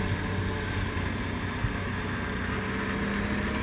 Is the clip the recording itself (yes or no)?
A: yes